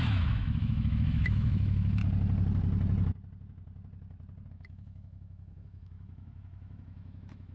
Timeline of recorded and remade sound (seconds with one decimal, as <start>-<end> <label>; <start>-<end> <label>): 0.0-2.0 remade; 2.0-4.5 recorded; 4.5-7.5 remade